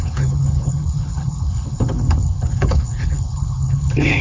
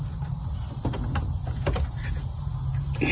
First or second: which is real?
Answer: second